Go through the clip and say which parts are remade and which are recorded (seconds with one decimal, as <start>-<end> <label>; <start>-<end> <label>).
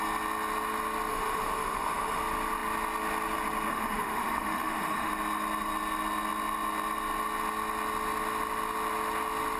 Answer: 0.0-1.1 recorded; 1.1-2.2 remade; 2.2-3.7 recorded; 3.7-5.1 remade; 5.1-9.6 recorded